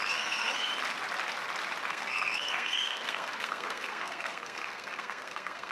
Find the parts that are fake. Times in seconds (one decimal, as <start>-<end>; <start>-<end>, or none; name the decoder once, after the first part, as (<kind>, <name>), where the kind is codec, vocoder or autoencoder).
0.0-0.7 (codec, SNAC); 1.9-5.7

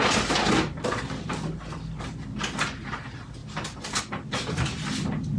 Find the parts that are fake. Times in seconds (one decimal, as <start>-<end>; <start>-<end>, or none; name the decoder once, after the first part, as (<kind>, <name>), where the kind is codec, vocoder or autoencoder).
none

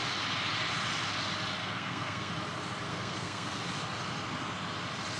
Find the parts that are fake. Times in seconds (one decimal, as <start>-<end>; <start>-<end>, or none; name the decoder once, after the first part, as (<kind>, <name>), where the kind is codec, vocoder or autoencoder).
1.6-2.3 (codec, SNAC); 2.9-3.6